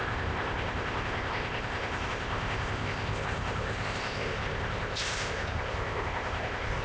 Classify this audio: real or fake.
fake